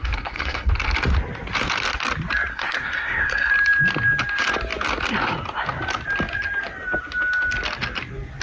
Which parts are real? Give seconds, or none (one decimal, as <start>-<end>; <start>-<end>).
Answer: 0.7-2.5; 3.5-8.4